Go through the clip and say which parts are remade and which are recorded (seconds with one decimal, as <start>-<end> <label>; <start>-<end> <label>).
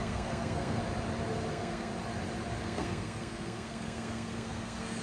0.0-0.8 remade; 0.8-1.5 recorded; 1.5-1.9 remade; 1.9-2.6 recorded; 2.6-5.0 remade